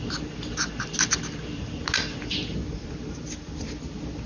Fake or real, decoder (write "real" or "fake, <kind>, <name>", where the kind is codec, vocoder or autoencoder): real